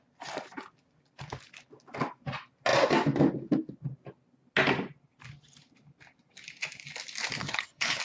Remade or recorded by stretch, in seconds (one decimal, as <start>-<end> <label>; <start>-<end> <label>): 0.0-7.4 recorded; 7.4-8.0 remade